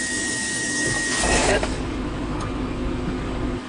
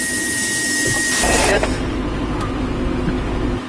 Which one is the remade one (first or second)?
first